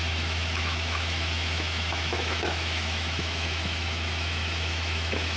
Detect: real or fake fake